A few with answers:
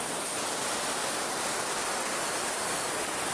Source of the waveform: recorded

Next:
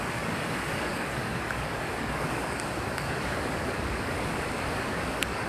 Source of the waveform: remade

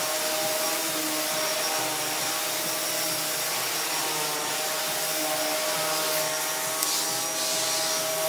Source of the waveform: recorded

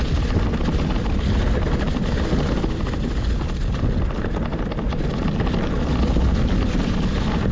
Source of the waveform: recorded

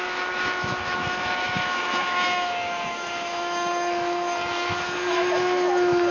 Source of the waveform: remade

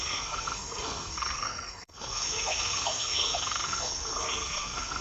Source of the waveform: remade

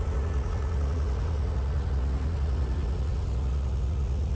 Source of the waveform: remade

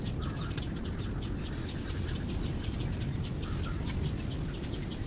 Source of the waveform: recorded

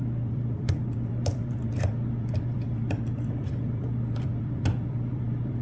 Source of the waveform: remade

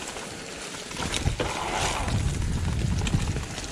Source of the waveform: recorded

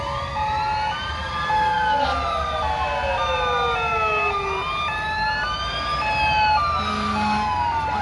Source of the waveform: recorded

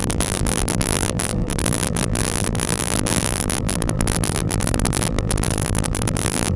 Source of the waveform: remade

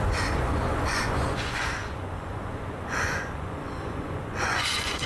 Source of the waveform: remade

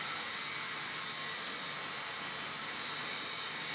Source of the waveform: recorded